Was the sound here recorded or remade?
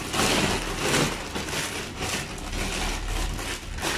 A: recorded